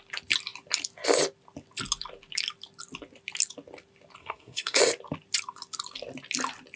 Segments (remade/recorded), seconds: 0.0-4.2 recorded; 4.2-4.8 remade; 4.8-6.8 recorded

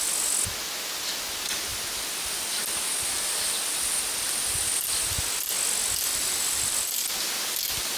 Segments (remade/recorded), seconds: 0.0-6.1 recorded; 6.1-7.1 remade; 7.1-8.0 recorded